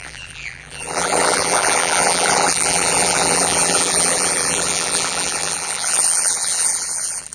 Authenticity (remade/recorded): remade